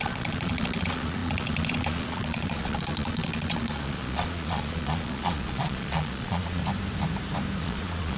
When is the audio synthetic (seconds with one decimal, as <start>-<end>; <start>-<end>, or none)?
0.0-6.6; 7.6-8.2